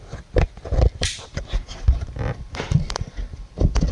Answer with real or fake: fake